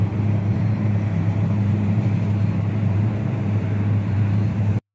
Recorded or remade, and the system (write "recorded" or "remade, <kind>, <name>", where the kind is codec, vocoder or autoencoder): remade, vocoder, BigVGAN v2